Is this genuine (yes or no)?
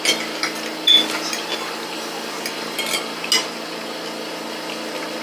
yes